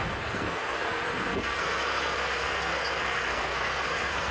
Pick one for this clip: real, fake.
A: fake